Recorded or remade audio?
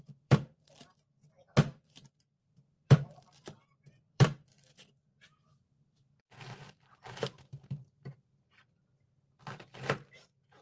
remade